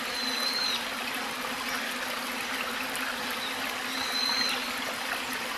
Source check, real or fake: real